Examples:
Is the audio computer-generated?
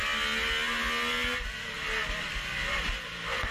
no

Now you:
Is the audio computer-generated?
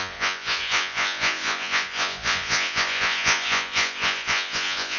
yes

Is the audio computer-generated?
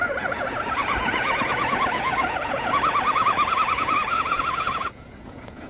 yes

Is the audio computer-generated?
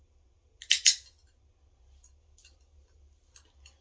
no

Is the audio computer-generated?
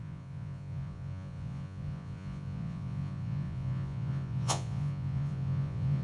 yes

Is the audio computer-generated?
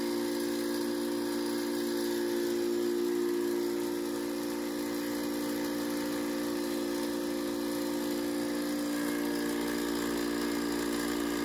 no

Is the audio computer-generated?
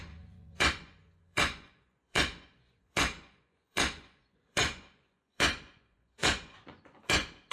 yes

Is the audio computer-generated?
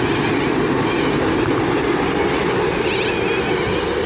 no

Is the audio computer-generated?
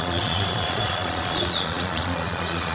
yes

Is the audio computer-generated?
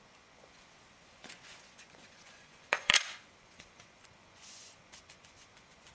yes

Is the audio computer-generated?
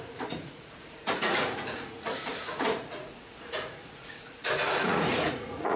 yes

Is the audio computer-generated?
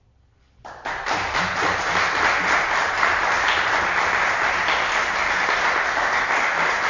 no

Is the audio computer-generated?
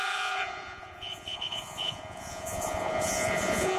yes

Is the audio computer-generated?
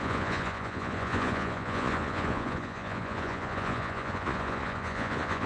yes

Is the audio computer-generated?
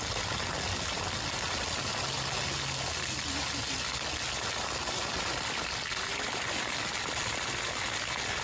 no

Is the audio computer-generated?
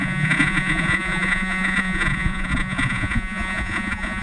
yes